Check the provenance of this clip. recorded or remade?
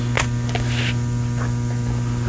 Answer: recorded